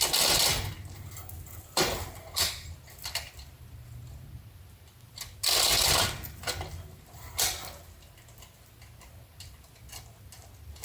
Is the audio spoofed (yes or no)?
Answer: no